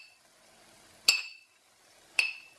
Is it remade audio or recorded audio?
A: recorded